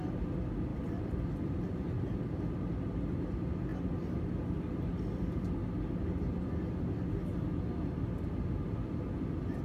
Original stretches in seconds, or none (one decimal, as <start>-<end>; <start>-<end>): 0.0-0.7; 1.5-9.6

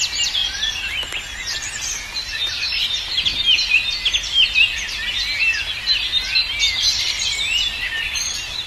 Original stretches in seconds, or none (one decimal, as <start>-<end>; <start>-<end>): 0.0-8.7

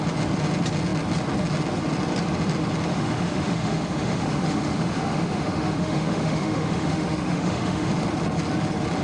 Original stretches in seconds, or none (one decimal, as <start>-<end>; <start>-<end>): 0.0-2.9; 7.9-9.0